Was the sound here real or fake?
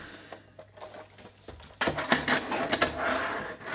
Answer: real